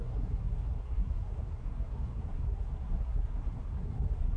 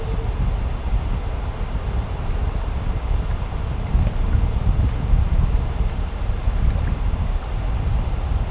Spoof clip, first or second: first